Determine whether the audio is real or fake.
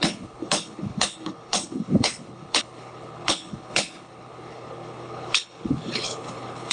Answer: fake